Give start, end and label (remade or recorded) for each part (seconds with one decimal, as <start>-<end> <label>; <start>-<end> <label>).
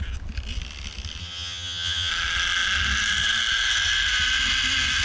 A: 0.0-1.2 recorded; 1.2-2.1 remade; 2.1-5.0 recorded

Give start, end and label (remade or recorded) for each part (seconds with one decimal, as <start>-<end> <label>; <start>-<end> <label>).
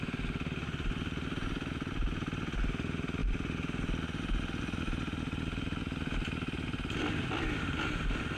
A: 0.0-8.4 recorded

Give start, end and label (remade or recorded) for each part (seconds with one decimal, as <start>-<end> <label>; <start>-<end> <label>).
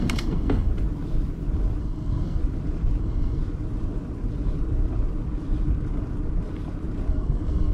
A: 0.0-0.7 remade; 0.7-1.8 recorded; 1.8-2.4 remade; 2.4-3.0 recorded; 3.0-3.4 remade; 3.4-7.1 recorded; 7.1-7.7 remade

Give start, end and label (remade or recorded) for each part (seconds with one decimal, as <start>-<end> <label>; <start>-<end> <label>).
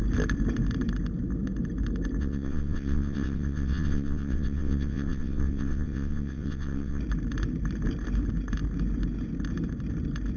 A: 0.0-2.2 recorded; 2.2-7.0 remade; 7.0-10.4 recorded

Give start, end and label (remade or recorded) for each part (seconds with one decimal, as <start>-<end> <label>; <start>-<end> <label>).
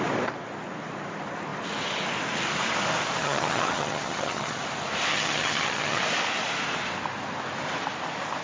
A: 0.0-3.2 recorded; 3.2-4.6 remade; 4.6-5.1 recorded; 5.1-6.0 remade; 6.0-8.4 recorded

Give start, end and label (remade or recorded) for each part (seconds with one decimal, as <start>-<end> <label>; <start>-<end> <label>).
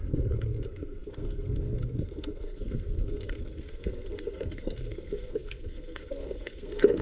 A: 0.0-7.0 remade